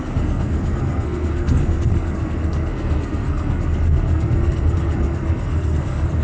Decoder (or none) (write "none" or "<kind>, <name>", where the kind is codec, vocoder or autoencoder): codec, SNAC